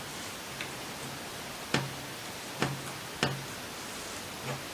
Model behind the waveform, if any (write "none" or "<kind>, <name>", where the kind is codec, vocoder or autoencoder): none